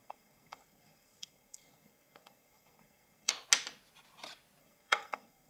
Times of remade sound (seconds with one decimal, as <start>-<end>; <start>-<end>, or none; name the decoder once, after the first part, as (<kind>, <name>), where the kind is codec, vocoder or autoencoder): 0.0-3.3 (codec, SNAC); 4.6-5.5